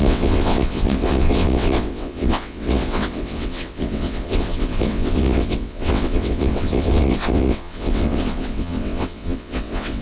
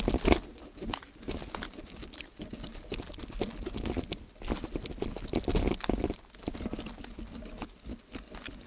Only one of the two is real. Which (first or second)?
second